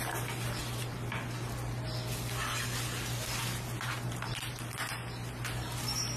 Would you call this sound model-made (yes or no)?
no